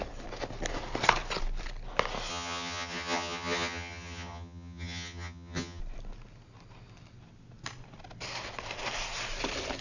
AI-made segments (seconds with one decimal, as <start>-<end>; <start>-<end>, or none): 2.3-5.8